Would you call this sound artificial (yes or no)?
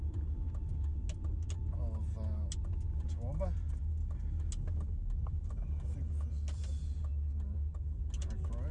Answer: no